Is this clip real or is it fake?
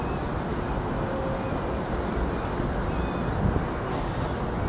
real